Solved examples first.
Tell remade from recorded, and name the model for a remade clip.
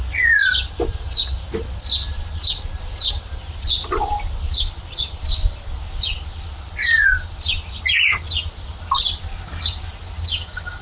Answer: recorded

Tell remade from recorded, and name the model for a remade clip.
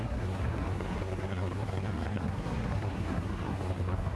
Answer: remade, codec, SNAC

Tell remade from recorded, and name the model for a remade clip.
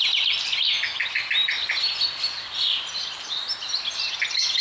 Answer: recorded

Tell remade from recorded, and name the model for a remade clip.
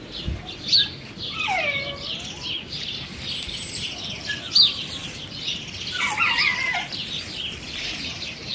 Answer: recorded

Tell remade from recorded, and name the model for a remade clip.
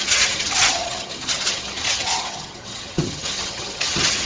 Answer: remade, vocoder, HiFi-GAN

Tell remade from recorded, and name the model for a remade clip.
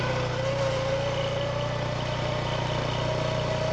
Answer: recorded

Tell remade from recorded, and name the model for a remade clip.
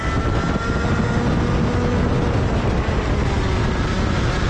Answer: recorded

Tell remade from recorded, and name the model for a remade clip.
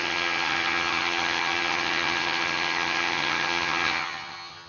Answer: remade, vocoder, HiFi-GAN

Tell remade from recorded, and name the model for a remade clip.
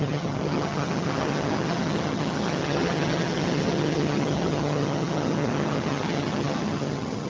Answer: remade, vocoder, HiFi-GAN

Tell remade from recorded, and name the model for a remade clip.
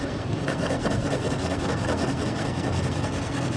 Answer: remade, codec, SNAC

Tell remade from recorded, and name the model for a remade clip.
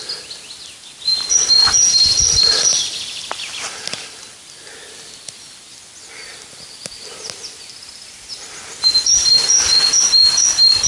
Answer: recorded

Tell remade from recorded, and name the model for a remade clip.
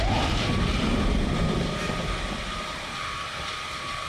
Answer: remade, vocoder, BigVGAN v2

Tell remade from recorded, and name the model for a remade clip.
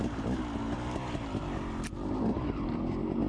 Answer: recorded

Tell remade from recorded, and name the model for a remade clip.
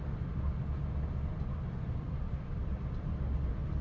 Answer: recorded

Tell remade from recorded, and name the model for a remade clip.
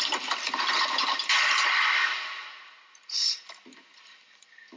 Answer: recorded